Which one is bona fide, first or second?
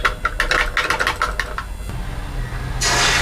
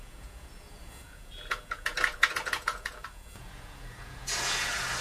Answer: first